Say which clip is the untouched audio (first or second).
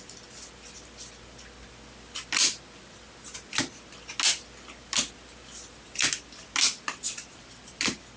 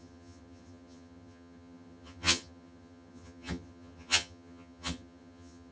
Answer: first